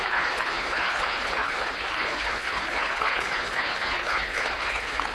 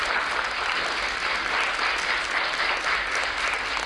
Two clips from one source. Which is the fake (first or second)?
first